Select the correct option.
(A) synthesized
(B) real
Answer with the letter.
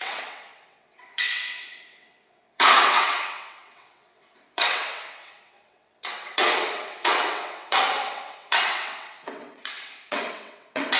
A